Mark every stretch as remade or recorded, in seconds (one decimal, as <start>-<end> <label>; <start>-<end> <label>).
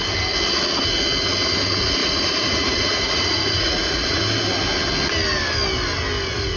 0.0-2.0 recorded; 2.0-4.2 remade; 4.2-6.6 recorded